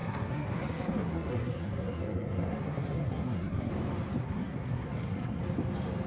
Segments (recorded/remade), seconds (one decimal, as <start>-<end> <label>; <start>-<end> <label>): 0.0-3.7 remade; 3.7-4.2 recorded; 4.2-5.4 remade; 5.4-6.1 recorded